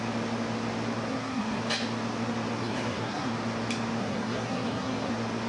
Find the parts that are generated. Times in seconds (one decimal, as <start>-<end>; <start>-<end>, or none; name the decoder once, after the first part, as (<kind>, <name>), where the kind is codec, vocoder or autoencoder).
1.1-1.6 (codec, SNAC); 2.6-3.3; 4.0-5.1

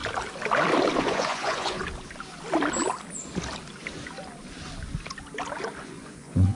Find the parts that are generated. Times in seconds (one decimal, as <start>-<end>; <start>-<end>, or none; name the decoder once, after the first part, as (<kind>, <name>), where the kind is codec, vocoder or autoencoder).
1.0-1.8 (vocoder, Vocos); 5.8-6.6